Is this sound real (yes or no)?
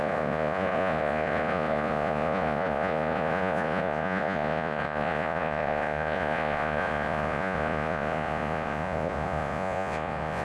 no